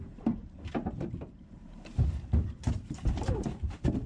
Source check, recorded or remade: remade